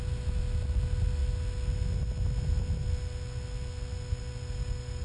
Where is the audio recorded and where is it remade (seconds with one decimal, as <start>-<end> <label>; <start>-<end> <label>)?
0.0-5.0 recorded